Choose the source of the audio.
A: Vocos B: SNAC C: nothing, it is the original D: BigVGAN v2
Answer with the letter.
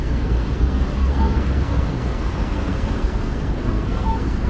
B